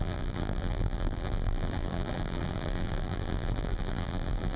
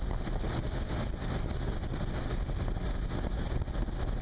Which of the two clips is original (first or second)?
second